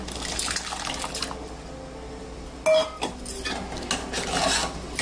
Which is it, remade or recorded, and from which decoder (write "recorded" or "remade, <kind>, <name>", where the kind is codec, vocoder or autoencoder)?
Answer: recorded